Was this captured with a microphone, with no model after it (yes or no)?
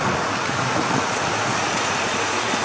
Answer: no